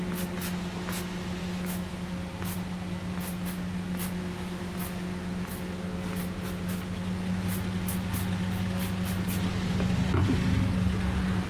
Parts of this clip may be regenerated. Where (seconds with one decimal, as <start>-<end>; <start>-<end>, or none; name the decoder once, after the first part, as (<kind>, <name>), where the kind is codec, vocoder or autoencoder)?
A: 1.4-1.9 (autoencoder, DAC-VAE)